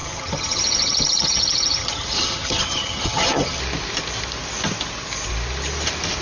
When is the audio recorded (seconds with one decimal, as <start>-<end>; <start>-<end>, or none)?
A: 3.6-6.2